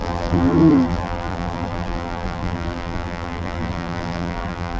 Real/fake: fake